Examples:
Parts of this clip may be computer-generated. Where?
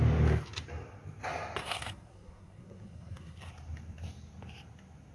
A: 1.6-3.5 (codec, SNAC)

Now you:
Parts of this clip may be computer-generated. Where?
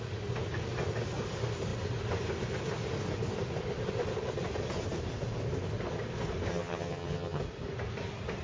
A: 6.5-7.4 (vocoder, HiFi-GAN)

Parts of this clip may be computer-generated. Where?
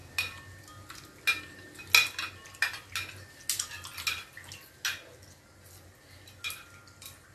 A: none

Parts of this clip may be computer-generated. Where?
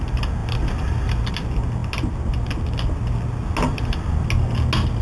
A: none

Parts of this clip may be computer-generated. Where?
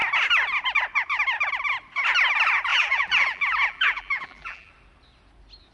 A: 2.7-4.7 (vocoder, BigVGAN v2)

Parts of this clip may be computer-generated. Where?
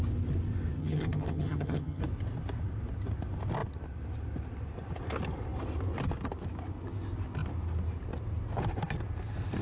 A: 0.8-2.0 (vocoder, HiFi-GAN)